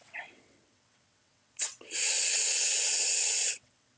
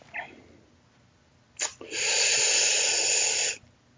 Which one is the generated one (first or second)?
first